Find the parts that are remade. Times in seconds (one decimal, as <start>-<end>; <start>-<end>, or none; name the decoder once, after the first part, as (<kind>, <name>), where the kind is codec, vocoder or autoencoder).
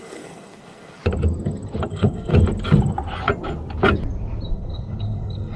0.0-1.0 (codec, SNAC); 1.9-2.3; 4.5-5.6